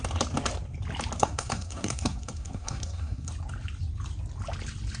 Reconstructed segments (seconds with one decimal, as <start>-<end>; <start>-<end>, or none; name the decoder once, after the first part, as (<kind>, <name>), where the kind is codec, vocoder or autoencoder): 1.2-3.3 (codec, SNAC)